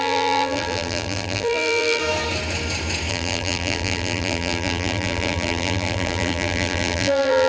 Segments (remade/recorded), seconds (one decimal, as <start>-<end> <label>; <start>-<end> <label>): 0.0-2.0 remade; 2.0-3.1 recorded; 3.1-7.5 remade